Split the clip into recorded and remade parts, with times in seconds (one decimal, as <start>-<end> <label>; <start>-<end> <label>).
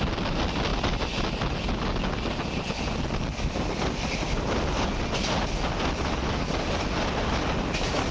0.0-8.1 recorded